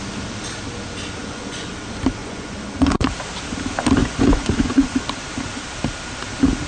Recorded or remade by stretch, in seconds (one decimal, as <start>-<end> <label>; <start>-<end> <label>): 0.0-1.2 recorded; 1.2-1.7 remade; 1.7-2.2 recorded; 2.2-3.1 remade; 3.1-4.0 recorded; 4.0-5.0 remade; 5.0-6.7 recorded